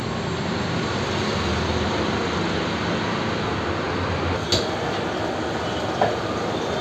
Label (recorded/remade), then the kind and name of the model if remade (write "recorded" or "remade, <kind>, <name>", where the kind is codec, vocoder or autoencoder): recorded